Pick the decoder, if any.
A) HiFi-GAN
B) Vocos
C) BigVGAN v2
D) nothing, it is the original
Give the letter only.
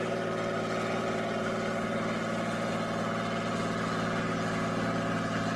D